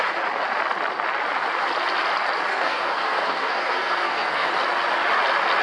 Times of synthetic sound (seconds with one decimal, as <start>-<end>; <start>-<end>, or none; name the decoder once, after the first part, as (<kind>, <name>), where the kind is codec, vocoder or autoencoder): 2.5-4.5 (codec, SNAC)